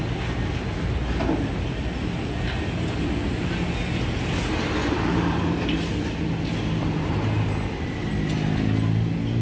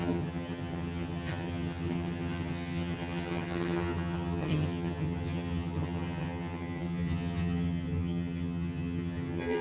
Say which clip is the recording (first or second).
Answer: first